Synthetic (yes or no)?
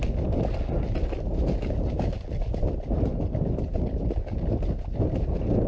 no